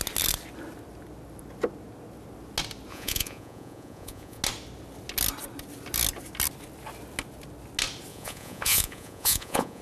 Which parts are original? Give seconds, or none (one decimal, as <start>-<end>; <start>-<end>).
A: 0.0-2.9; 4.4-8.1